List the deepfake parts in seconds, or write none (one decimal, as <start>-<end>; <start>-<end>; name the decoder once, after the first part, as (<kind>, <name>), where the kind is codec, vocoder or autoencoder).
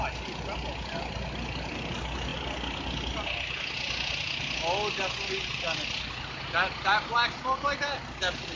none